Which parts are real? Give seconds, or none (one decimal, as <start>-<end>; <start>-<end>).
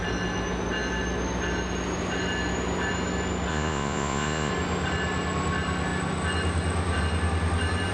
0.0-3.5; 4.5-7.9